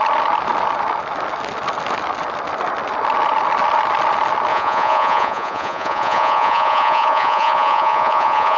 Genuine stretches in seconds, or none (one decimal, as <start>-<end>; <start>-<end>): 0.0-4.5